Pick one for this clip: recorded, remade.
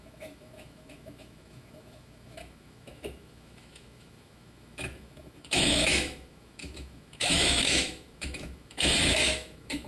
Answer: remade